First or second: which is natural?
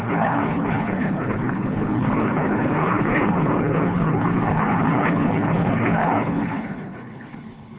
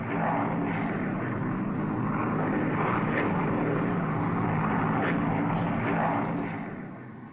second